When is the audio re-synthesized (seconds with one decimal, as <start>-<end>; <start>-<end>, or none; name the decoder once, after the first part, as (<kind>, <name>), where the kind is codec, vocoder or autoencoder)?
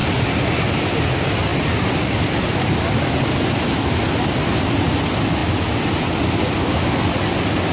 none